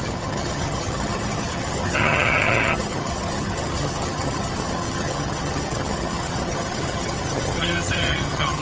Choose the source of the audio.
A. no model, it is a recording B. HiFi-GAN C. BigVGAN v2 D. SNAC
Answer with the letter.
B